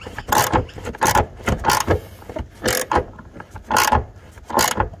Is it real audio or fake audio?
real